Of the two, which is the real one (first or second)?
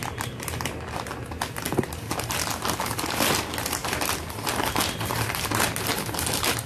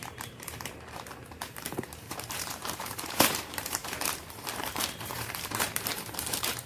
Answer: first